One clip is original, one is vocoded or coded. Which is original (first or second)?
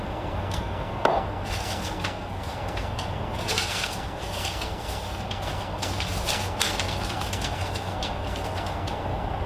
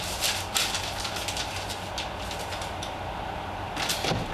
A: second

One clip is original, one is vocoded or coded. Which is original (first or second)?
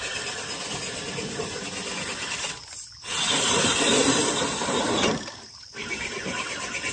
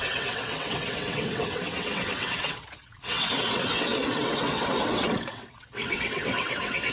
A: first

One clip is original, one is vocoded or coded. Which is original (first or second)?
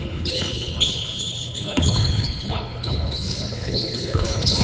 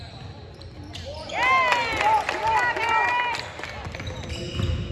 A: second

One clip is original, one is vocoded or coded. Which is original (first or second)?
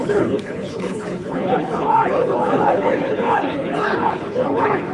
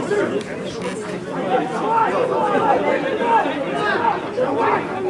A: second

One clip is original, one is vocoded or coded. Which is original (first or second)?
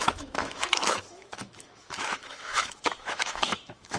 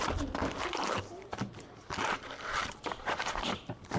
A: second